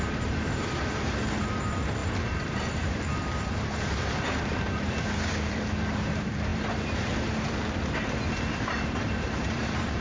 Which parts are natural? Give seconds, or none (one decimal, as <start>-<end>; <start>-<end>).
none